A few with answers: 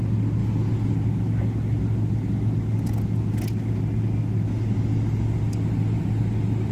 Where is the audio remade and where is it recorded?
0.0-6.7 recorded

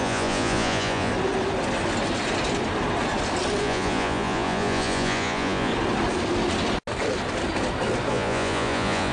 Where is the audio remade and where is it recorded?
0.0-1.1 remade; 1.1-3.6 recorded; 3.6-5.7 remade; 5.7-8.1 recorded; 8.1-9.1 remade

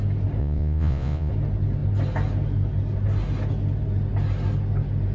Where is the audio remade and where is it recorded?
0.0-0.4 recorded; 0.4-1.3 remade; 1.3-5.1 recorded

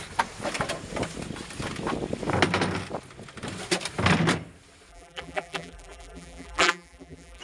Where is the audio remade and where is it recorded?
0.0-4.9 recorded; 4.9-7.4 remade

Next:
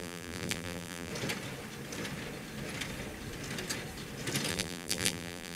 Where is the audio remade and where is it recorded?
0.0-1.1 remade; 1.1-4.5 recorded; 4.5-5.6 remade